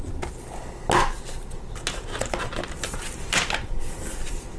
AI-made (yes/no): no